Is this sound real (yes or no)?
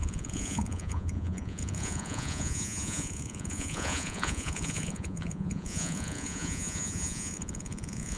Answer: no